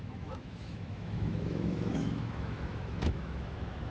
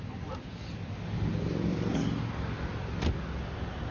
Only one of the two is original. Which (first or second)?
second